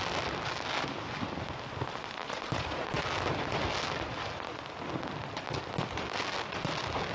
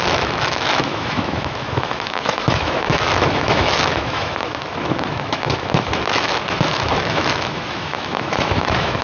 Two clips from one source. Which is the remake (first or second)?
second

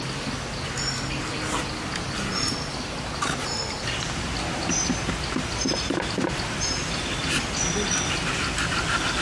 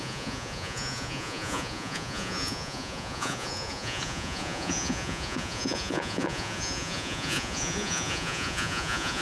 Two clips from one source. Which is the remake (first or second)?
second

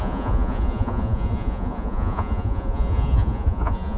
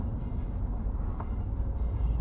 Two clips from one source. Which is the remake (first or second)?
first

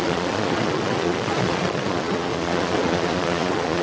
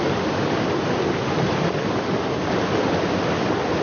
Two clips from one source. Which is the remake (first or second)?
first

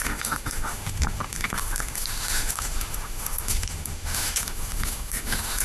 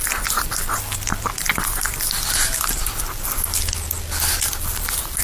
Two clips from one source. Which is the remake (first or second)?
first